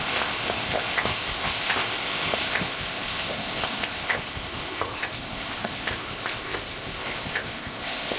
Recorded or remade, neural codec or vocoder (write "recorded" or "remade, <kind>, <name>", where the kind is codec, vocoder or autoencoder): remade, codec, ZipCodec